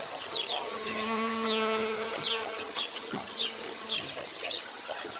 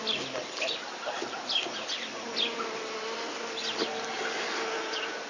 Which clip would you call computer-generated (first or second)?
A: first